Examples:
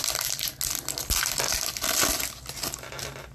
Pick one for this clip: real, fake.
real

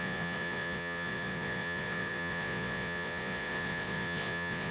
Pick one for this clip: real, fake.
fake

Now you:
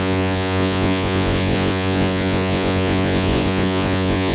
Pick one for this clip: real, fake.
fake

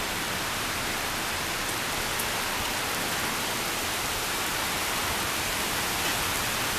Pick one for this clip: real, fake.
real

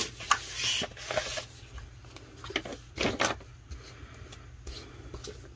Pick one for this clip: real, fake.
real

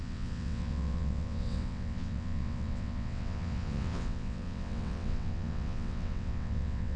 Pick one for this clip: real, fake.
fake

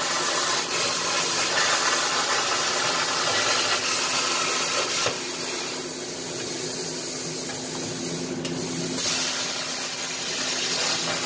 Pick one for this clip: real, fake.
real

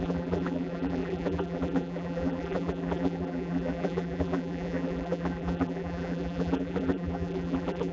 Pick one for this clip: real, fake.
fake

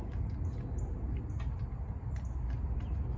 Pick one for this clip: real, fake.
real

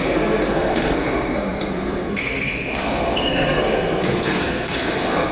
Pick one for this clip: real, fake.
fake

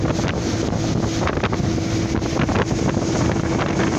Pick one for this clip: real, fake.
real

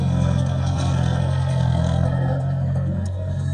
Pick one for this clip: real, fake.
fake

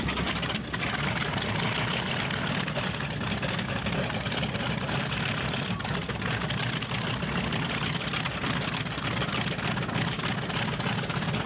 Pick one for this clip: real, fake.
real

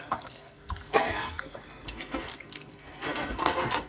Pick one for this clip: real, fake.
fake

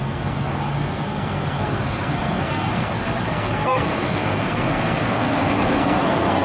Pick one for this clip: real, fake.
fake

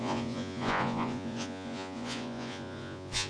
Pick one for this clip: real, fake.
fake